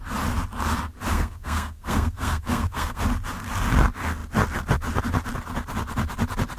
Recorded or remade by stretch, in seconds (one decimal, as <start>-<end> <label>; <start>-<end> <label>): 0.0-1.1 recorded; 1.1-3.0 remade; 3.0-6.6 recorded

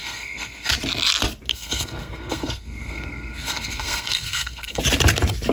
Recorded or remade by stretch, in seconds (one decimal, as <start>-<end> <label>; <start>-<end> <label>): 0.0-0.7 remade; 0.7-1.5 recorded; 1.5-4.8 remade; 4.8-5.5 recorded

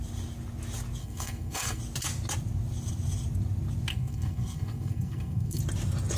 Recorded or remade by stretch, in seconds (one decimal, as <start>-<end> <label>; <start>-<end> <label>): 0.0-1.0 recorded; 1.0-1.8 remade; 1.8-3.9 recorded; 3.9-5.6 remade; 5.6-6.2 recorded

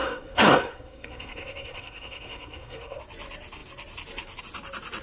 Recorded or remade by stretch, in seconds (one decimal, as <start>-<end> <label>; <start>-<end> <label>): 0.0-3.0 remade; 3.0-5.0 recorded

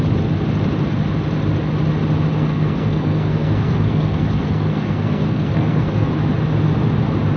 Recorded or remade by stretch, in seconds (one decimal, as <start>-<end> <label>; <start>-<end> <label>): 0.0-2.3 recorded; 2.3-6.1 remade; 6.1-7.4 recorded